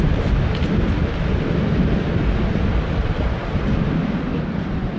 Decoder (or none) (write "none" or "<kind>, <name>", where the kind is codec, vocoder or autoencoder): none